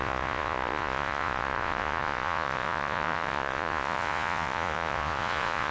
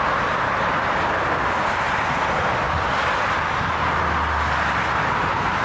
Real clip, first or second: second